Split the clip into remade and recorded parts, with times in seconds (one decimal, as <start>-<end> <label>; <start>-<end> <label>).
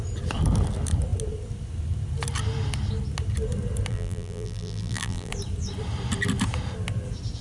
0.0-3.9 recorded; 3.9-5.3 remade; 5.3-7.4 recorded